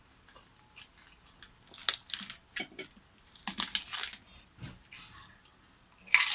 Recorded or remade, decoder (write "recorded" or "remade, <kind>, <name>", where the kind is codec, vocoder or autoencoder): recorded